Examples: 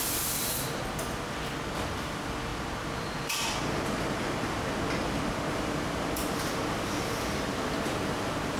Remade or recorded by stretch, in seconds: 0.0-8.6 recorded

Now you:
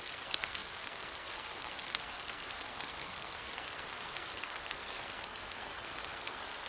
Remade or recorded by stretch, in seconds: 0.0-6.7 remade

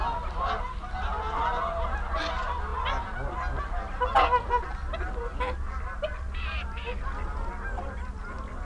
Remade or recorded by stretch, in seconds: 0.0-8.6 recorded

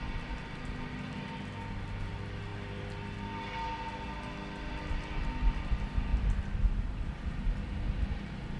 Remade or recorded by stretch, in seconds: 0.0-8.6 recorded